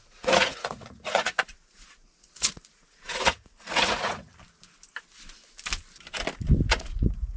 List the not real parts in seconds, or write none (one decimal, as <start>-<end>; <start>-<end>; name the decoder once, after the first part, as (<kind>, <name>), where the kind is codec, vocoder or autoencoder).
0.0-4.3 (vocoder, Vocos); 6.7-7.4